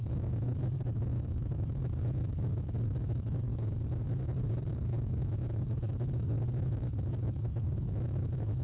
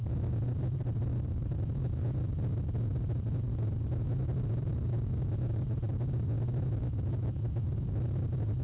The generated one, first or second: first